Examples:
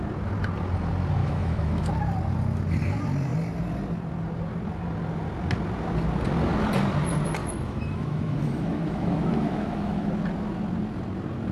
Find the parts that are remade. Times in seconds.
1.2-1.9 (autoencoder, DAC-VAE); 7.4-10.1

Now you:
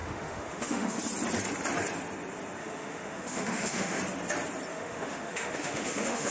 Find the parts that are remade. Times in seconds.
0.0-1.0 (autoencoder, DAC-VAE); 2.6-4.0; 4.7-6.3

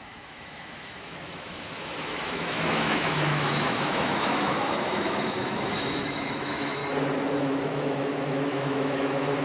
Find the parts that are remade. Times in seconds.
0.0-6.8 (autoencoder, DAC-VAE); 7.4-9.4

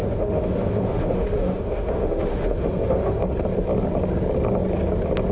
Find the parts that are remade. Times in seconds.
0.0-3.2 (autoencoder, DAC-VAE)